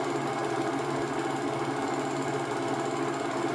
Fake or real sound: real